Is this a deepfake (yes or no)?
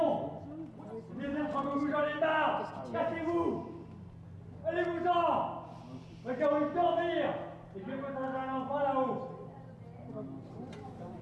no